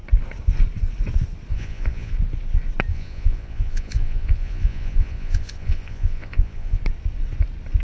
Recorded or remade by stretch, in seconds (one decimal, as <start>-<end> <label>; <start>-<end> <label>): 0.0-1.5 recorded; 1.5-2.1 remade; 2.1-2.9 recorded; 2.9-6.8 remade; 6.8-7.8 recorded